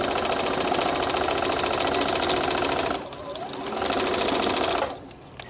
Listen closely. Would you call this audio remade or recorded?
recorded